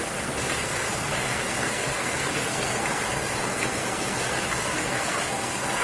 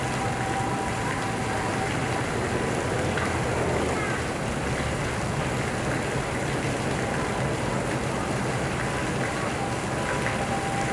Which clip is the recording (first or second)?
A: second